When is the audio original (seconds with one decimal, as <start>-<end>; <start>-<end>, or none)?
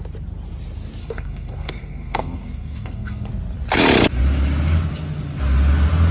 0.0-1.0; 3.3-6.1